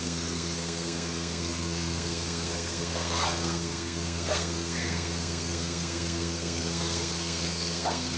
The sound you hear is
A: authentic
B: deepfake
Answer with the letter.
B